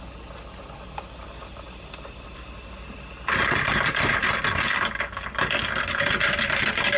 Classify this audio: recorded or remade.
recorded